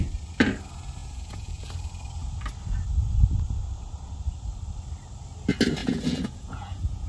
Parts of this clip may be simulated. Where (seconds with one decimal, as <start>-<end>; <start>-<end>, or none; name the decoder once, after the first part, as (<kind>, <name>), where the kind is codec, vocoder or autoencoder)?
1.0-1.7 (vocoder, Vocos); 5.8-7.1